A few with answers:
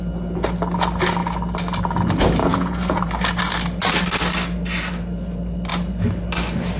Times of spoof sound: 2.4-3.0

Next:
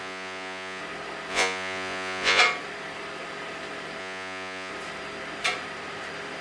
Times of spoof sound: 0.0-0.8; 1.3-2.4; 4.0-4.7

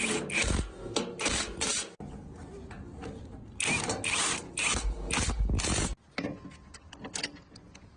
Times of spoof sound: none